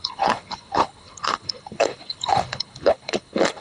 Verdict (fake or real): fake